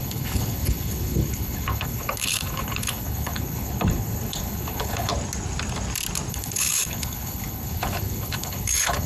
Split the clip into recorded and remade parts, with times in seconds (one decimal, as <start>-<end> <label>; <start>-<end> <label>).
0.0-5.1 remade; 5.1-6.3 recorded; 6.3-9.1 remade